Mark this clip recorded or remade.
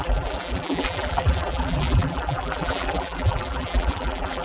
remade